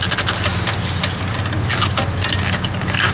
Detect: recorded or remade recorded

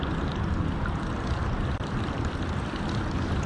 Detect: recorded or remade recorded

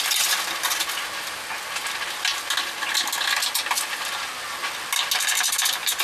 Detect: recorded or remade recorded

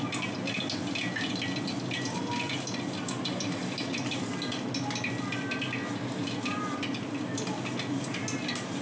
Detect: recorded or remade recorded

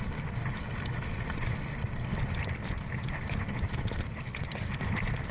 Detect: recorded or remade recorded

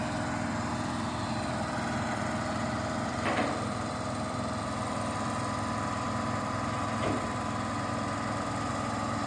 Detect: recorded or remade recorded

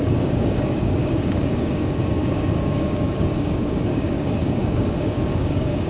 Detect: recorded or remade remade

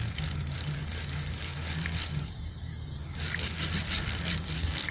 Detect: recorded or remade remade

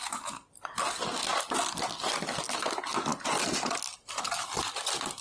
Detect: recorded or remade recorded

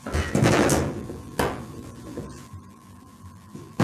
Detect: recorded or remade remade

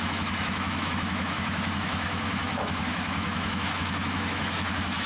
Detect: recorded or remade remade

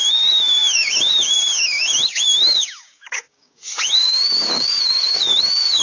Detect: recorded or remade remade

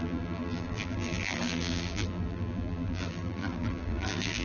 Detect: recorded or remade remade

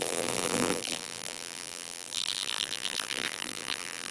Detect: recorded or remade remade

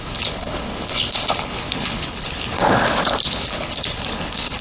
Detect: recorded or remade remade